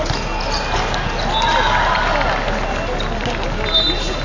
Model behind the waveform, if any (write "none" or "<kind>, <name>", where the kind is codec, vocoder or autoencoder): none